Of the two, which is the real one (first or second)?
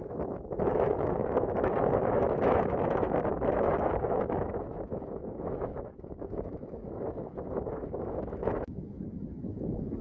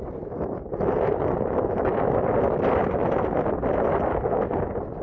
second